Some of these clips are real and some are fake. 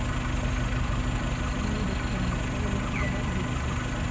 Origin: real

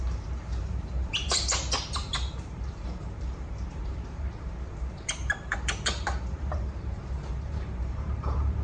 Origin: fake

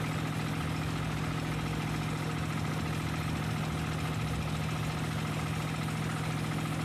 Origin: real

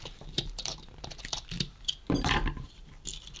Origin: fake